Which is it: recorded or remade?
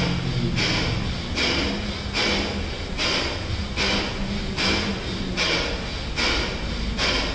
recorded